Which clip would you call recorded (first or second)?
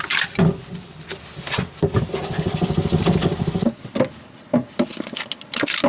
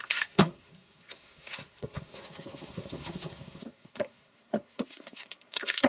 first